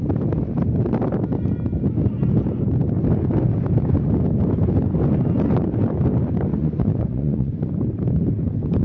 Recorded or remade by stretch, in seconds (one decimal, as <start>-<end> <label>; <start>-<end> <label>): 0.0-6.6 recorded; 6.6-7.5 remade; 7.5-8.8 recorded